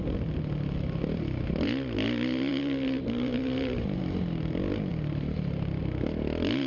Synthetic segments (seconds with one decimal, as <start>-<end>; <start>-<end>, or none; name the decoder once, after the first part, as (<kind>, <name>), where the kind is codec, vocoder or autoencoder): 2.5-4.0 (vocoder, BigVGAN v2); 4.9-5.8